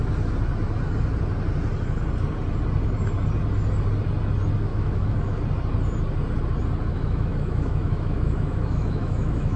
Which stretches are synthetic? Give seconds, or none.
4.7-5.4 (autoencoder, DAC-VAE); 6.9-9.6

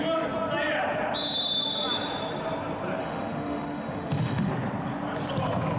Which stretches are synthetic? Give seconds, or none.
3.0-4.5 (autoencoder, DAC-VAE)

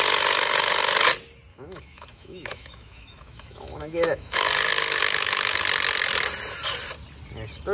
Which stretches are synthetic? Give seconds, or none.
1.5-4.5 (autoencoder, DAC-VAE); 5.0-5.6

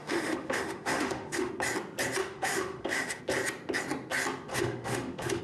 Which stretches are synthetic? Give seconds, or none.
0.0-1.5 (autoencoder, DAC-VAE); 2.2-3.2; 4.5-5.4

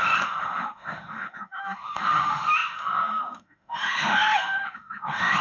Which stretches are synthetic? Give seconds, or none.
0.0-5.4 (autoencoder, DAC-VAE)

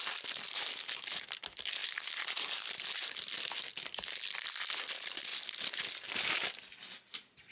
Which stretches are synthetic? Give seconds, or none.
none

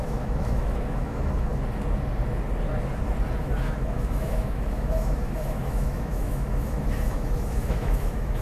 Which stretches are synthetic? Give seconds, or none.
0.0-1.5 (autoencoder, DAC-VAE); 3.4-8.4